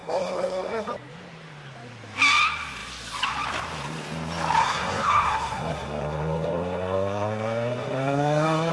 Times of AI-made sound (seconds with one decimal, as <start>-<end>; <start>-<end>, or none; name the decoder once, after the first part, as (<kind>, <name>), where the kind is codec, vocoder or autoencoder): 0.0-0.9 (codec, SNAC); 4.6-8.7